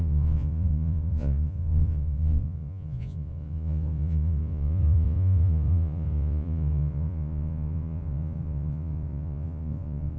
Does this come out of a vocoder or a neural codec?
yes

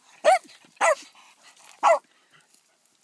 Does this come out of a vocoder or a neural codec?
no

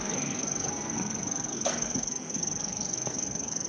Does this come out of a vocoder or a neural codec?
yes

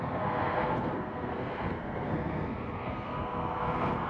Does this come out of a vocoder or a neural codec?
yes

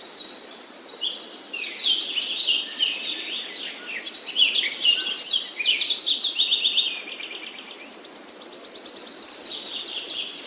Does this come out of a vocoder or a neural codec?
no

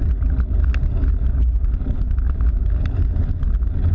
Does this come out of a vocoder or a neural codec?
no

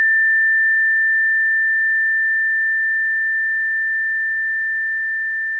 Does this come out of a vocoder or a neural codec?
no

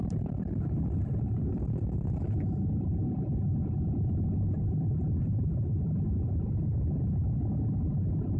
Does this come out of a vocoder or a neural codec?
no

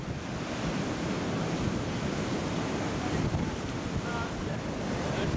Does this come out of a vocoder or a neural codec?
no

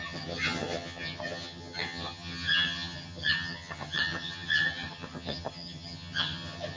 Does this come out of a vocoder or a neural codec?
yes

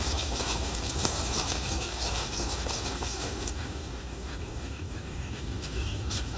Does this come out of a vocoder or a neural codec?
yes